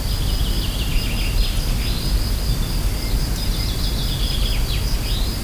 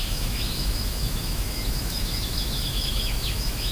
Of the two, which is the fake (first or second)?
second